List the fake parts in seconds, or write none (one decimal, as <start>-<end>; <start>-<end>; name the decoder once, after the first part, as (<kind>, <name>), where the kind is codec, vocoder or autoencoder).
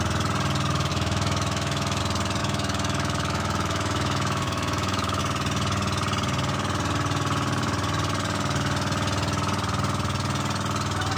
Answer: 0.9-2.0 (autoencoder, DAC-VAE); 2.4-5.2